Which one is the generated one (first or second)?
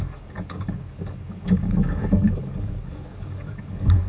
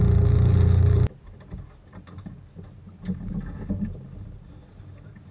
first